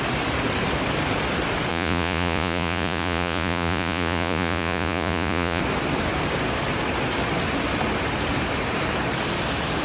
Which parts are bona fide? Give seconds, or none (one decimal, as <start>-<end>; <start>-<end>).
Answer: 0.0-1.7; 5.6-9.8